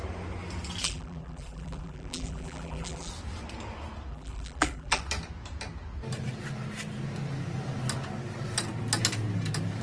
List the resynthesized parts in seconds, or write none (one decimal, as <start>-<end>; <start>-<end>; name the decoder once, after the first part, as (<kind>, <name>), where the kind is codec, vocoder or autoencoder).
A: 0.8-3.1 (vocoder, BigVGAN v2); 4.1-5.0